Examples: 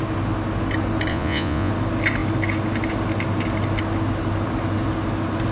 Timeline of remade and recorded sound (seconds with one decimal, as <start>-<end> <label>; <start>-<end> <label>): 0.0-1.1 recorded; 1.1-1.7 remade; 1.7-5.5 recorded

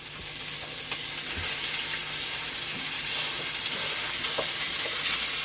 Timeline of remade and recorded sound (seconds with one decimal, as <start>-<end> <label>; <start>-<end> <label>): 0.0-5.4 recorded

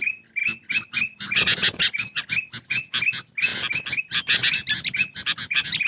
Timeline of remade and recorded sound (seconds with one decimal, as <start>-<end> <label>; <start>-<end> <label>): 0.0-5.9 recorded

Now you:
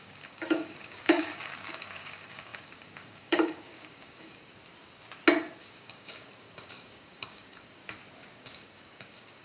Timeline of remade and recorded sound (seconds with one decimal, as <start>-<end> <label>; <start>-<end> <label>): 0.0-4.5 remade; 4.5-5.6 recorded; 5.6-7.8 remade; 7.8-8.3 recorded; 8.3-9.4 remade